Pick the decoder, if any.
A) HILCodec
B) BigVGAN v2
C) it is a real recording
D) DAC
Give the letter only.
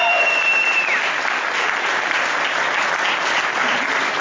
C